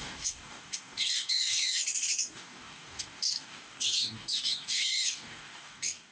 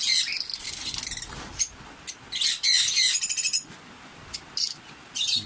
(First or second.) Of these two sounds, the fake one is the first